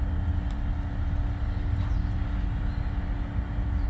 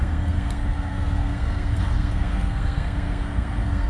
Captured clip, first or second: first